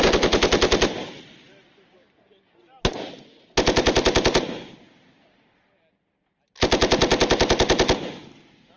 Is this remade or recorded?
recorded